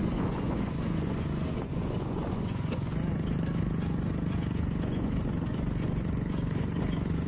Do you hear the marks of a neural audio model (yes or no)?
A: yes